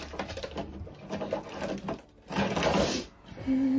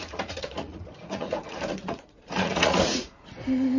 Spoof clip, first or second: second